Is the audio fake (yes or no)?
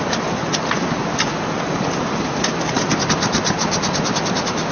no